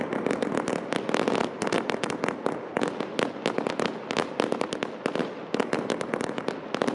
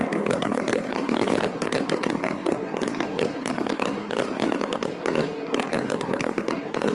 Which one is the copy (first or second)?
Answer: second